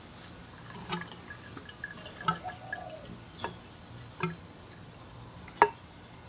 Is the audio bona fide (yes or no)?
yes